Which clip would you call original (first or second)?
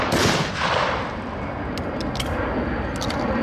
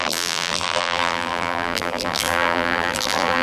first